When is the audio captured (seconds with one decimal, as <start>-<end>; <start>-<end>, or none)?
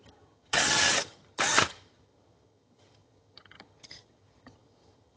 none